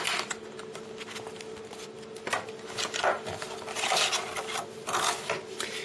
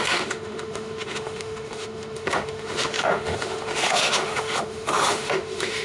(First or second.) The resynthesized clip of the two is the second